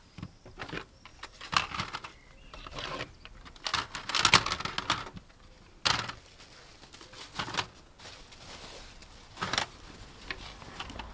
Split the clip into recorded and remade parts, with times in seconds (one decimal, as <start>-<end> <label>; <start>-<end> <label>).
0.0-3.7 remade; 3.7-8.0 recorded; 8.0-11.1 remade